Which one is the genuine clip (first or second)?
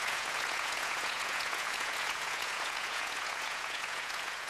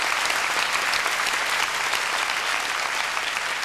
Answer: second